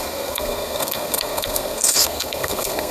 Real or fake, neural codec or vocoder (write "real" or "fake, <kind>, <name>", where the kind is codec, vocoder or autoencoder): fake, codec, SNAC